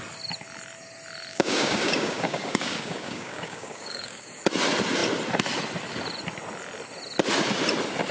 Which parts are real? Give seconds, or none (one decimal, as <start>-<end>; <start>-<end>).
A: 0.0-1.3; 4.3-8.1